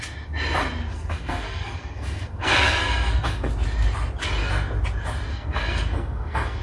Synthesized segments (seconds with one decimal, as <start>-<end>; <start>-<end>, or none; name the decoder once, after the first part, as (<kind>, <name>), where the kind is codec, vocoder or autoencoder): 0.9-3.5 (codec, SNAC); 5.3-6.6